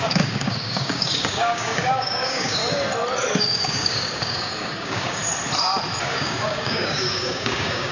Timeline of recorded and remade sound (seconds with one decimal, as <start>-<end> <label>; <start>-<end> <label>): 0.0-2.6 remade; 2.6-3.3 recorded; 3.3-5.2 remade; 5.2-6.0 recorded; 6.0-7.9 remade